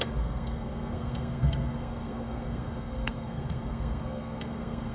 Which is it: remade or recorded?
remade